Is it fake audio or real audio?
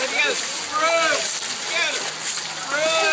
real